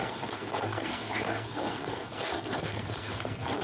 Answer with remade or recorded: remade